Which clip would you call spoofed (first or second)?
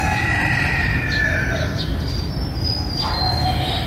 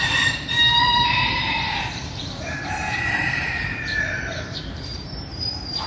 second